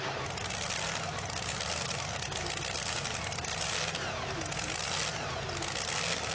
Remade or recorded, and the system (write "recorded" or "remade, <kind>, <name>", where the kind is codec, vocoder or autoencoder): recorded